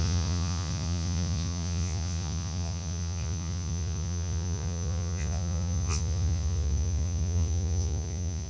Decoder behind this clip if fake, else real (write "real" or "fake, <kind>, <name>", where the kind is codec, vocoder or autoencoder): fake, vocoder, Vocos